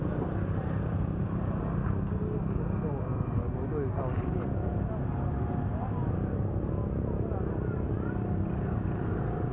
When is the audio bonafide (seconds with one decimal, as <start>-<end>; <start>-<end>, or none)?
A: 0.0-9.5